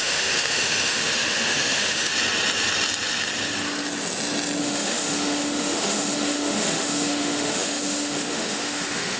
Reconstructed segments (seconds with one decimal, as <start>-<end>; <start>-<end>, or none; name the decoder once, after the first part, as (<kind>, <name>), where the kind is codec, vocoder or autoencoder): 0.0-2.1 (autoencoder, DAC-VAE); 4.6-9.2

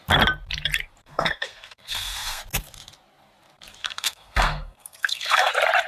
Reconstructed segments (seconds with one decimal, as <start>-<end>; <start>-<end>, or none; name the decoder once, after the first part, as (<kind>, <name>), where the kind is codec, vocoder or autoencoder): 1.0-2.4 (codec, SNAC); 3.8-5.5

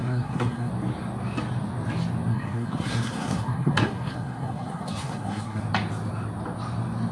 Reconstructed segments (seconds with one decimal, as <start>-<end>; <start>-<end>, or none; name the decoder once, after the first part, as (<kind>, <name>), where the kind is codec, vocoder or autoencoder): 0.0-0.7 (codec, SNAC); 2.3-5.6

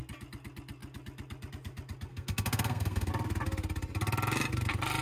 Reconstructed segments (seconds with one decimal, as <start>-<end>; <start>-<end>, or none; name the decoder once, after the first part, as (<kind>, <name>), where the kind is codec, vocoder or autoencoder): 2.1-3.1 (codec, SNAC)

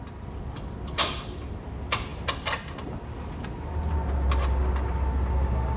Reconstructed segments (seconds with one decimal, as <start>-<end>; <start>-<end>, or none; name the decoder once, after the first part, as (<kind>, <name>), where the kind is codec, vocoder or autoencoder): none

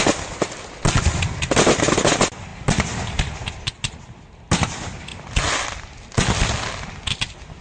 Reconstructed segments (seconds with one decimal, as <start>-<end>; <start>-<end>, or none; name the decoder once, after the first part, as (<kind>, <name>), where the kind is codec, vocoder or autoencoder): none